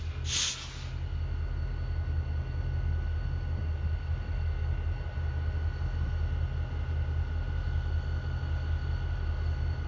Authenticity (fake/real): real